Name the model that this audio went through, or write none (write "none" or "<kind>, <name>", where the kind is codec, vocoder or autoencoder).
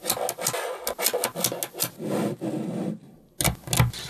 none